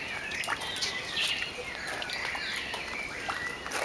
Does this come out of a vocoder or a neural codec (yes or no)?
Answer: no